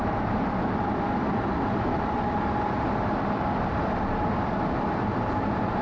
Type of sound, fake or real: fake